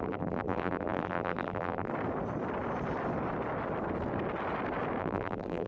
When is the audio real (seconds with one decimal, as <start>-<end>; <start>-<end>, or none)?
1.9-5.0